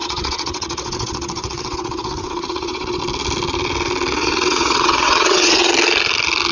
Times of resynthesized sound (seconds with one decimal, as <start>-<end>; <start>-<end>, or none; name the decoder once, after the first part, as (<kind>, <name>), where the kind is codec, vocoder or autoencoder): 0.0-3.0 (vocoder, WaveNeXt); 4.1-5.7